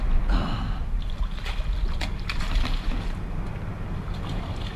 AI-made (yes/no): no